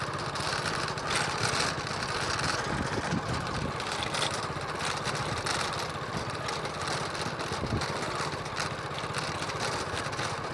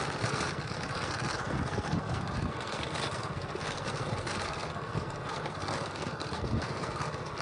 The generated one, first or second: second